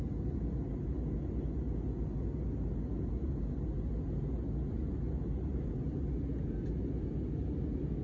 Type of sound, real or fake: real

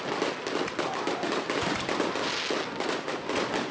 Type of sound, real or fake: real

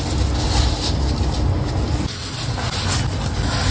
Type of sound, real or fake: real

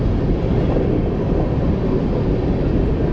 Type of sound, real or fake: real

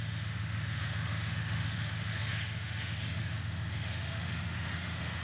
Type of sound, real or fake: fake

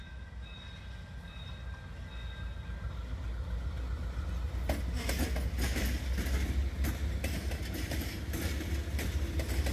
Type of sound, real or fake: real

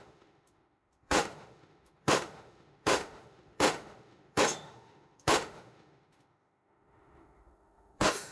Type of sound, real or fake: fake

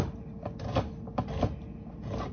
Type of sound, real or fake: real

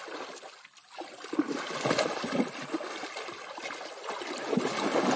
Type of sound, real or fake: real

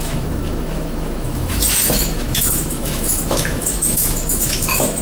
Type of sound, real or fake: fake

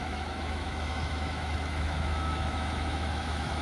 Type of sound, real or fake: fake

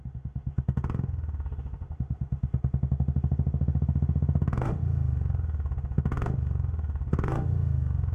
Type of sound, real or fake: fake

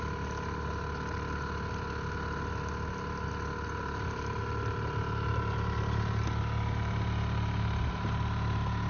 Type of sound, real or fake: real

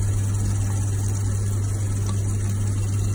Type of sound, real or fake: real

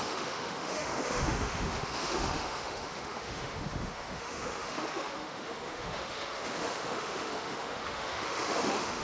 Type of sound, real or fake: fake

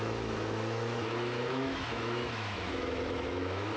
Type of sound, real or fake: fake